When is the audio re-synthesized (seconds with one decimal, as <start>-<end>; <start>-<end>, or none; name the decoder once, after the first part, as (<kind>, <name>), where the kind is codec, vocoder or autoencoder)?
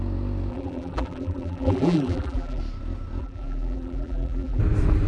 0.5-2.6 (vocoder, BigVGAN v2); 3.2-4.6